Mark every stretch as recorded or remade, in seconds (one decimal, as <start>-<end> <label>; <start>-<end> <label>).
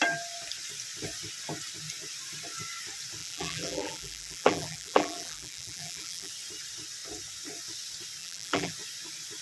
0.0-3.2 recorded; 3.2-6.3 remade; 6.3-8.2 recorded; 8.2-8.7 remade; 8.7-9.4 recorded